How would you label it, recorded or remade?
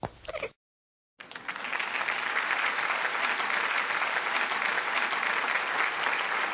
recorded